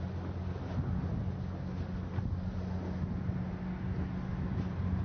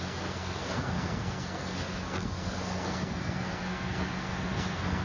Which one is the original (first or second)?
first